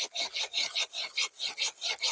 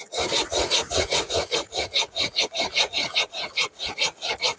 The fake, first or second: second